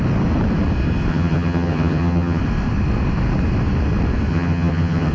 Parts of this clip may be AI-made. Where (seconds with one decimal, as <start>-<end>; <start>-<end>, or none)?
1.1-2.4; 4.3-5.1